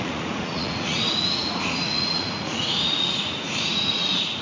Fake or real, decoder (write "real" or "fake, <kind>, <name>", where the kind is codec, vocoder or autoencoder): fake, vocoder, Vocos